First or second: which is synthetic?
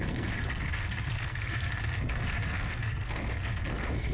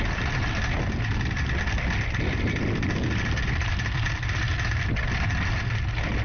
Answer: first